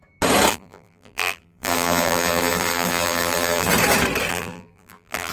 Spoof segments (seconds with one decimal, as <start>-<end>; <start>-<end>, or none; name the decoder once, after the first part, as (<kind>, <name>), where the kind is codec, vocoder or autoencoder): 0.5-3.7 (vocoder, BigVGAN v2); 4.3-5.3

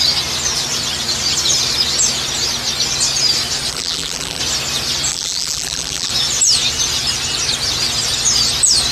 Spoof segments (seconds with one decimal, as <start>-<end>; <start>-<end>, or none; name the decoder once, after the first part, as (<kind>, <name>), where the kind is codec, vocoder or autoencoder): 3.7-4.4 (vocoder, BigVGAN v2); 5.1-6.1